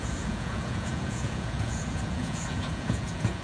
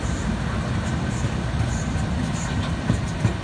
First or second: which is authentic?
second